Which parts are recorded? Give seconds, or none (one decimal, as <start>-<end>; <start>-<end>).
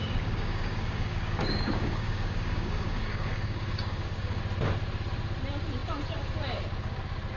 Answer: 4.4-7.4